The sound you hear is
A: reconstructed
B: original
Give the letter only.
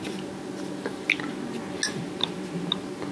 B